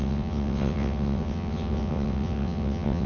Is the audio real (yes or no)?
no